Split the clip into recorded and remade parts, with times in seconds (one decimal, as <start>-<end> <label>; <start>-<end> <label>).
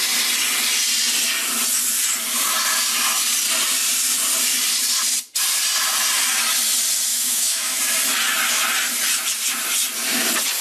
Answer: 0.0-7.1 recorded; 7.1-7.8 remade; 7.8-10.6 recorded